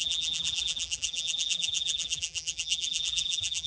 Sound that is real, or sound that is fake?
fake